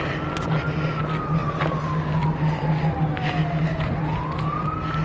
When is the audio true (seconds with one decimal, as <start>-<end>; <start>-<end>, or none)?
0.0-5.0